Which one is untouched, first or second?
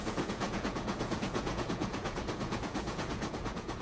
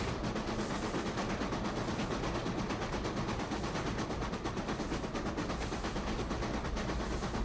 second